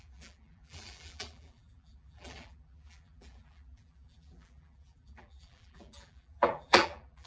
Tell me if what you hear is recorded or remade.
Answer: remade